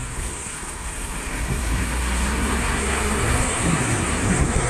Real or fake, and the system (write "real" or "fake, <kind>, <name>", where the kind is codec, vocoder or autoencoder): fake, codec, SNAC